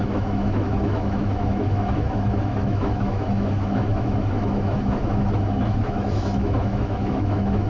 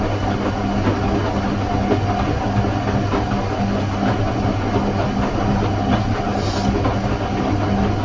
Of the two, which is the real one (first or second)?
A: second